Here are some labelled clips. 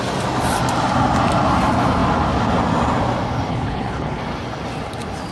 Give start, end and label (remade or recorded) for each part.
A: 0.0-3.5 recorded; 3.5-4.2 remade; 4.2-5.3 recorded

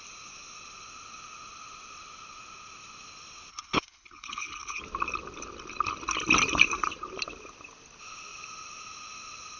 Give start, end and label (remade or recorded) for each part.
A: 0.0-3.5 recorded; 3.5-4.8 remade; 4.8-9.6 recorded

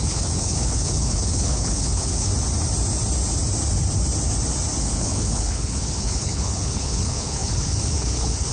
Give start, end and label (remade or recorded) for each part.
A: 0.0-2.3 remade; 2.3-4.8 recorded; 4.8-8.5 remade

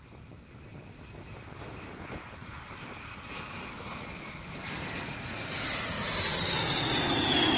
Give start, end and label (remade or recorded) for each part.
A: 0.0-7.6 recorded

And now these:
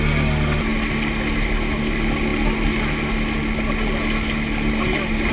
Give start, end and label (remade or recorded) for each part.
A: 0.0-5.3 recorded

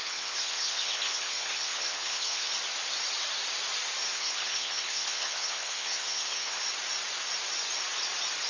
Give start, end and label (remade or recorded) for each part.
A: 0.0-2.5 remade; 2.5-4.1 recorded; 4.1-6.6 remade; 6.6-8.5 recorded